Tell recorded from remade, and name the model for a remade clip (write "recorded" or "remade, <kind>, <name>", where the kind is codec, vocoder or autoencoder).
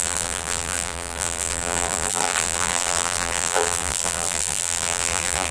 remade, vocoder, BigVGAN v2